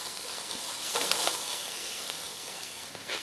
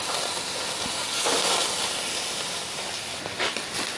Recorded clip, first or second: second